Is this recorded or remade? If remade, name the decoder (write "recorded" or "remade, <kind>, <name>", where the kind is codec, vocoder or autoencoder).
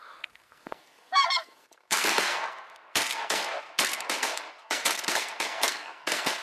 remade, codec, SNAC